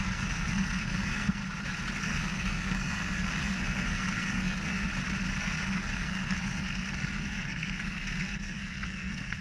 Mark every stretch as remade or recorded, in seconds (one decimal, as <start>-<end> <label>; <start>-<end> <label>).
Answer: 0.0-1.4 remade; 1.4-2.0 recorded; 2.0-4.9 remade; 4.9-5.4 recorded; 5.4-9.4 remade